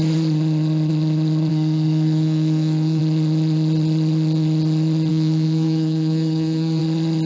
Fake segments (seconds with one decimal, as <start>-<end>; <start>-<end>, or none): 1.5-3.0; 5.1-6.8